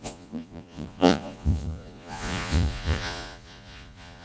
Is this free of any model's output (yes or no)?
no